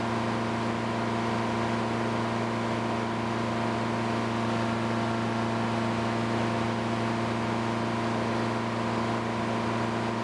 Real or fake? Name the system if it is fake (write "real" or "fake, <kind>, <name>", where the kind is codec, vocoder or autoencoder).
real